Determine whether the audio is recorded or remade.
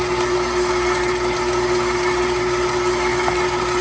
recorded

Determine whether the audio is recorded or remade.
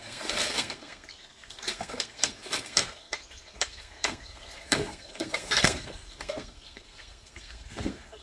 remade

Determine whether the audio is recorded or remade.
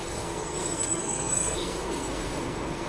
remade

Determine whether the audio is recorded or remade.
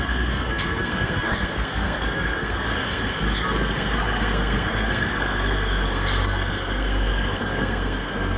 remade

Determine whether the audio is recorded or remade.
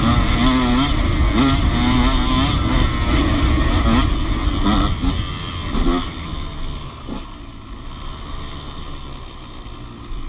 recorded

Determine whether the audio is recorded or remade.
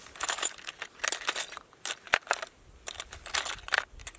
recorded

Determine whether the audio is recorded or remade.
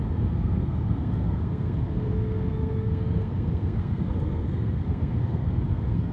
remade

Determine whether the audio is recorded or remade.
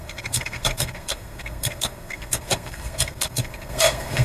remade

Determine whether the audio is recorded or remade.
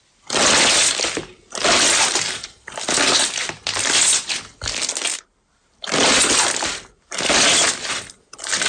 recorded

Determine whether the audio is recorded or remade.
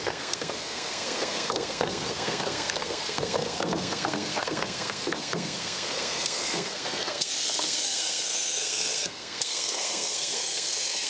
remade